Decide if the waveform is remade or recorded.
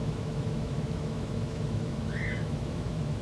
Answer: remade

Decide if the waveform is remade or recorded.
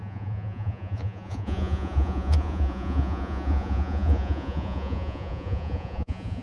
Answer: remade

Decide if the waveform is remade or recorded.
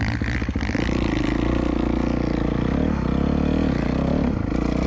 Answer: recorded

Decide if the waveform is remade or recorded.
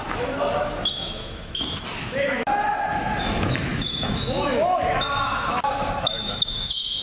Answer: remade